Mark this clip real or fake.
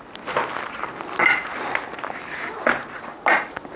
real